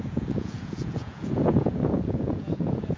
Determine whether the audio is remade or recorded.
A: remade